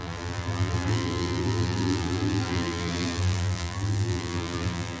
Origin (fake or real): fake